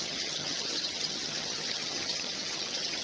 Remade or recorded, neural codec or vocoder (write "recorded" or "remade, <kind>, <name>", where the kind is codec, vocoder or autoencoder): remade, vocoder, HiFi-GAN